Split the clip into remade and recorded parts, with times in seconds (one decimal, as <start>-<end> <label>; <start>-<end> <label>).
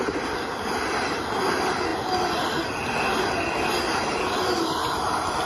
0.0-5.5 recorded